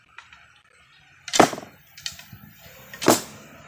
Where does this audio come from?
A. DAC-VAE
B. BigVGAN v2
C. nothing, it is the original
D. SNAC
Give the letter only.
C